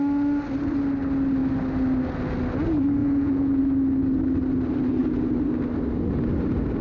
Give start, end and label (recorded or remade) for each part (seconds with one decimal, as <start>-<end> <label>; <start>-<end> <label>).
0.0-3.0 recorded; 3.0-3.6 remade; 3.6-6.8 recorded